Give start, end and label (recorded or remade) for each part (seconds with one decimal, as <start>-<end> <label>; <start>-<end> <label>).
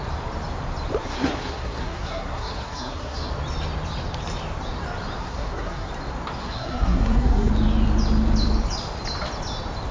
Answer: 0.0-1.0 recorded; 1.0-3.3 remade; 3.3-5.2 recorded; 5.2-5.9 remade; 5.9-6.4 recorded; 6.4-7.5 remade; 7.5-9.9 recorded